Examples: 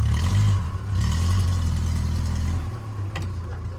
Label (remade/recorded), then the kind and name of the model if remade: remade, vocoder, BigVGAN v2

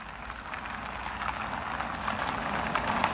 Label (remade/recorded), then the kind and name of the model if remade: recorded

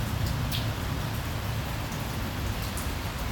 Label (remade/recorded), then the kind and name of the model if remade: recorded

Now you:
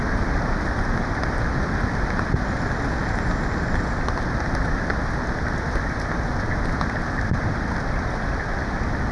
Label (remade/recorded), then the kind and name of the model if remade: recorded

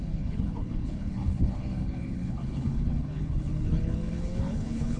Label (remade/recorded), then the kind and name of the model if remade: remade, codec, HILCodec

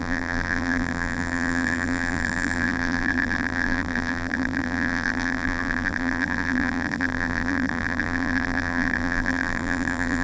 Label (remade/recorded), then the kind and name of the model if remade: remade, vocoder, BigVGAN v2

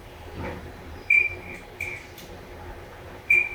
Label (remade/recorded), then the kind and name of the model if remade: remade, vocoder, BigVGAN v2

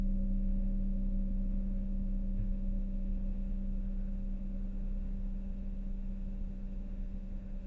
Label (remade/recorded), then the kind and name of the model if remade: remade, autoencoder, DAC-VAE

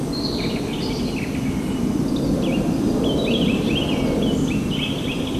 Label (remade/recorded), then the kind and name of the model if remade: recorded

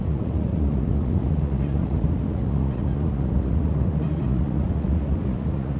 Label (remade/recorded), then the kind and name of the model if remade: remade, vocoder, Vocos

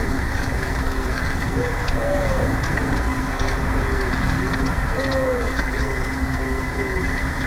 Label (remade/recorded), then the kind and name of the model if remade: remade, codec, SNAC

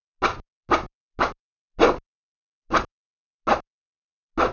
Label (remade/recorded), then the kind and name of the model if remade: recorded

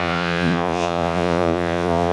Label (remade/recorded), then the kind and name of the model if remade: remade, vocoder, Vocos